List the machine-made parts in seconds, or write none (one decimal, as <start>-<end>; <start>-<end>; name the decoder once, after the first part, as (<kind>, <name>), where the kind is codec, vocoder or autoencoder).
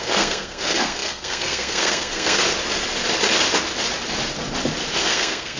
0.0-2.4 (codec, SNAC); 5.0-5.6